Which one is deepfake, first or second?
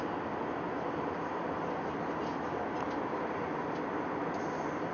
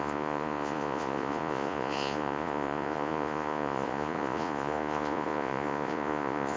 second